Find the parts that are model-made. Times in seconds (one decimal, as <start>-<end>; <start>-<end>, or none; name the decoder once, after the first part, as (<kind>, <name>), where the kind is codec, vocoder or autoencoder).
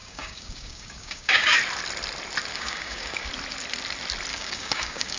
0.0-1.6 (codec, DAC); 2.5-3.3; 4.3-5.2